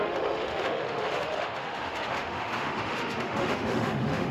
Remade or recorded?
remade